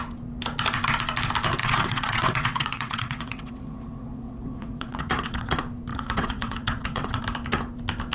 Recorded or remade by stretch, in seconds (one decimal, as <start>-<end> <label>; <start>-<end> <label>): 0.0-1.6 recorded; 1.6-5.5 remade; 5.5-5.9 recorded; 5.9-7.2 remade; 7.2-8.1 recorded